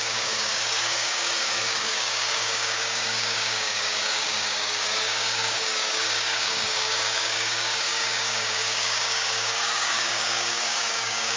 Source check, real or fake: fake